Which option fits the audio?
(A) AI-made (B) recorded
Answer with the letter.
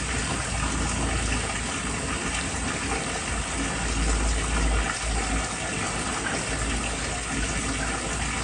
B